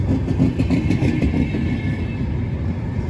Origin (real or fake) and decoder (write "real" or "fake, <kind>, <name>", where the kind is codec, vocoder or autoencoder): real